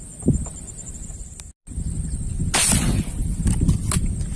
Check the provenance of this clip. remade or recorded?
recorded